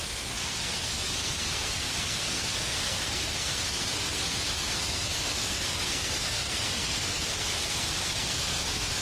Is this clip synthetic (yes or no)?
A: yes